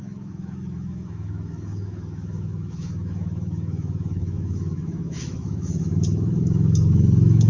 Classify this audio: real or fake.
fake